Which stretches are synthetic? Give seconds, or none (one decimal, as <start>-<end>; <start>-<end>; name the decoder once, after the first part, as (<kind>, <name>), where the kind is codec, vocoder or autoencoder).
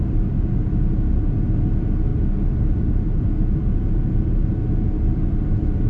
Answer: none